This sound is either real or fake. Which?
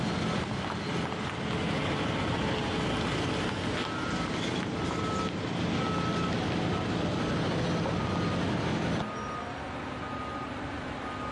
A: real